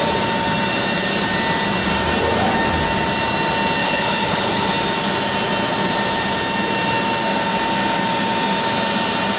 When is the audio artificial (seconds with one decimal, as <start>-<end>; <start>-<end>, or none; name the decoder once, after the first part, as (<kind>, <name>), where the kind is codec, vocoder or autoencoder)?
3.8-4.7 (codec, HILCodec)